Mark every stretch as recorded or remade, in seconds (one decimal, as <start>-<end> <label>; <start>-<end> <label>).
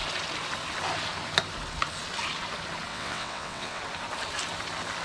0.0-2.9 recorded; 2.9-3.8 remade; 3.8-5.0 recorded